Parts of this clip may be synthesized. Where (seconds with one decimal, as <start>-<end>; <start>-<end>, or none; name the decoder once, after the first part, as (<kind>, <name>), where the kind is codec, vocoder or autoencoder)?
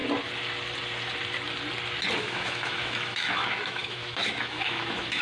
2.2-5.2 (autoencoder, DAC-VAE)